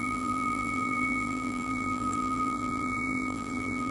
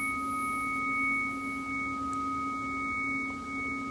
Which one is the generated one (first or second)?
first